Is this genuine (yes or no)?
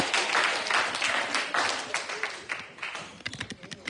yes